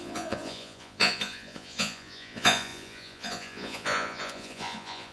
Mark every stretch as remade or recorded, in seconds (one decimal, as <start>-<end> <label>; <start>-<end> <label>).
0.0-5.1 remade